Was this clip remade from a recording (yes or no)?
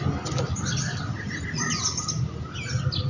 no